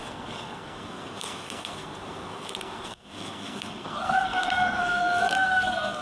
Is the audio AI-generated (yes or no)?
yes